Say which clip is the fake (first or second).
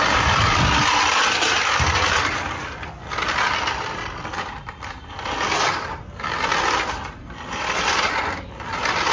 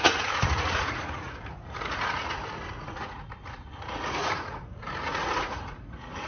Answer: second